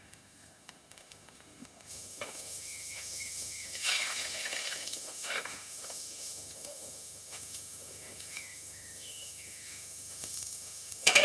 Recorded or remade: remade